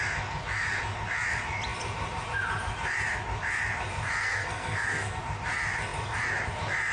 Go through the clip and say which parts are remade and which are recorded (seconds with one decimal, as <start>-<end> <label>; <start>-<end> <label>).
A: 0.0-4.2 recorded; 4.2-5.2 remade; 5.2-6.9 recorded

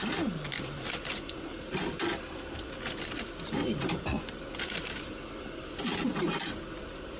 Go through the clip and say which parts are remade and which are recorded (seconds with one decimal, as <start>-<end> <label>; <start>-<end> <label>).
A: 0.0-7.2 remade

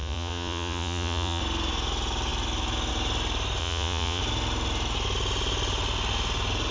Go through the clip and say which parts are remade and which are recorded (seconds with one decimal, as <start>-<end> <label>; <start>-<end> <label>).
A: 0.0-1.4 remade; 1.4-3.6 recorded; 3.6-4.2 remade; 4.2-6.7 recorded

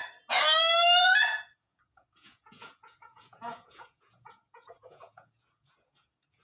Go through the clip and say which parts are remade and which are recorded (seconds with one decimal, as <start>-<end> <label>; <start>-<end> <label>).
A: 0.0-1.0 recorded; 1.0-6.4 remade

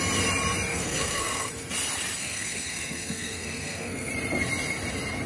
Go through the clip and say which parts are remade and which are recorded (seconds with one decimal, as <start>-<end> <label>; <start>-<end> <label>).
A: 0.0-0.7 recorded; 0.7-1.5 remade; 1.5-2.2 recorded; 2.2-4.1 remade; 4.1-5.3 recorded

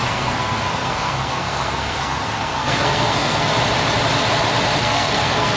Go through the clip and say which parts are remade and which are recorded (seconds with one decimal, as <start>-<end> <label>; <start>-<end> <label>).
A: 0.0-3.5 remade; 3.5-4.8 recorded; 4.8-5.6 remade